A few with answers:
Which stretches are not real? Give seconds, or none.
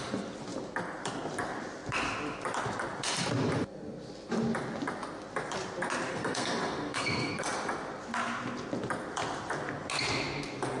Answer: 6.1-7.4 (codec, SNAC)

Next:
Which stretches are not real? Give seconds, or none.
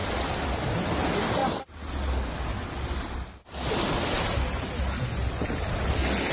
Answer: none